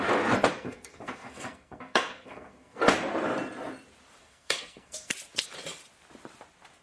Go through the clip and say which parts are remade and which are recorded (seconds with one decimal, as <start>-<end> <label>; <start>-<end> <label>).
0.0-0.5 recorded; 0.5-2.8 remade; 2.8-4.2 recorded; 4.2-5.1 remade; 5.1-6.8 recorded